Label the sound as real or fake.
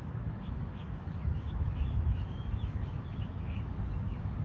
fake